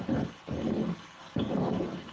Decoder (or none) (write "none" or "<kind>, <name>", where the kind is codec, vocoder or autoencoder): none